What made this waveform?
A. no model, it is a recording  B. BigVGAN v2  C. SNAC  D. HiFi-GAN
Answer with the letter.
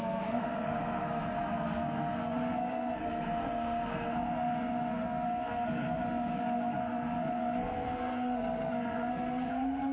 C